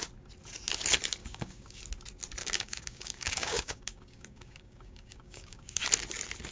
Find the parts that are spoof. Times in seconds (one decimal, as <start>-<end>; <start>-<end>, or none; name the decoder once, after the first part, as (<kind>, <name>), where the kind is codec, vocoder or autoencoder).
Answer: 1.2-1.8 (codec, DAC); 2.4-5.8